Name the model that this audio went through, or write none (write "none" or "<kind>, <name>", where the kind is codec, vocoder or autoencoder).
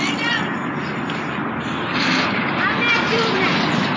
none